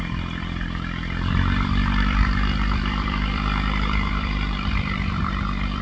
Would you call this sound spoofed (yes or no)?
yes